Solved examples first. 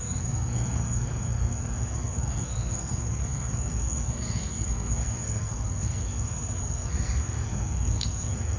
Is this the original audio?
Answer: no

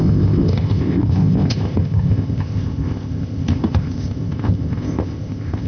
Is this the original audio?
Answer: no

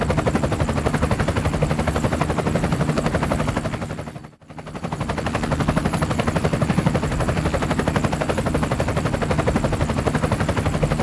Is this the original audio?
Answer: yes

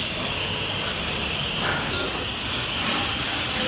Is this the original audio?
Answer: yes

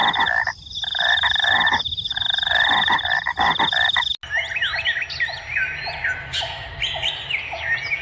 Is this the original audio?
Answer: yes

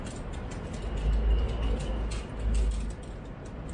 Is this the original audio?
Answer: yes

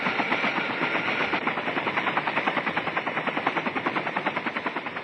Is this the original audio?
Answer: yes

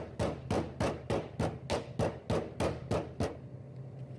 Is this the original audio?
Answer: yes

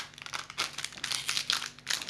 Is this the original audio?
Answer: yes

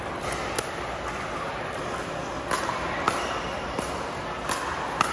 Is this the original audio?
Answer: yes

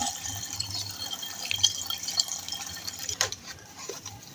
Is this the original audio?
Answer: no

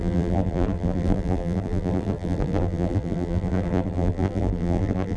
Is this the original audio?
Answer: no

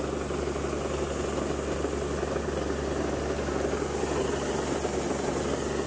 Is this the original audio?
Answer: yes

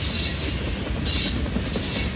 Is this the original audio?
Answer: yes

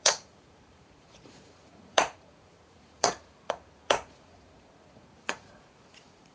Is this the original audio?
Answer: no